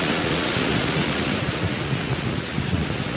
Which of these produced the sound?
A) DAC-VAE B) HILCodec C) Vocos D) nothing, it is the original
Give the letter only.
C